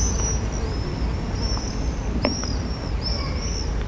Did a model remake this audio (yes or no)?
no